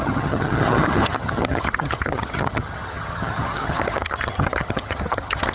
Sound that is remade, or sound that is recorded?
remade